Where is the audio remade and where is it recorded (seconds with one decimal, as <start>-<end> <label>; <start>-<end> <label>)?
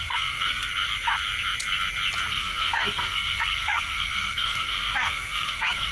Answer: 0.0-0.7 remade; 0.7-2.3 recorded; 2.3-5.9 remade